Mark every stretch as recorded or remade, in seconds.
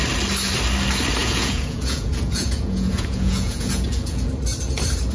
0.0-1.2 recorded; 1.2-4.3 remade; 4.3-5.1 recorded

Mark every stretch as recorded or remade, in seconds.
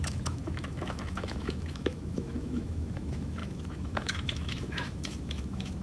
0.0-5.8 remade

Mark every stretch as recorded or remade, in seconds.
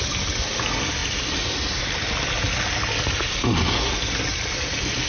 0.0-5.1 recorded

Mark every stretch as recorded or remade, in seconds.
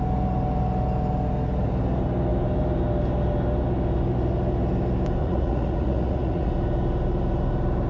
0.0-5.2 recorded; 5.2-6.5 remade; 6.5-7.9 recorded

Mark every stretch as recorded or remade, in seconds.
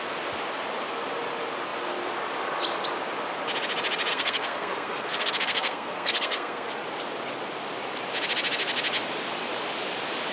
0.0-4.1 recorded; 4.1-6.7 remade; 6.7-10.3 recorded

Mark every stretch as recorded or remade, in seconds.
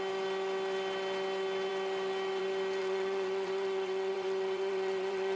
0.0-2.8 recorded; 2.8-5.4 remade